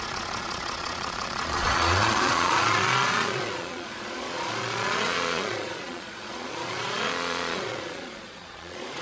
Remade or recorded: remade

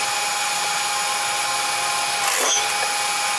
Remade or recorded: recorded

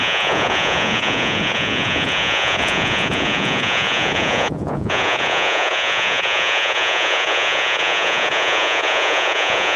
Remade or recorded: remade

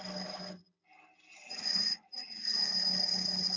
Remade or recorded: recorded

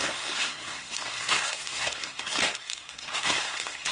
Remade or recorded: remade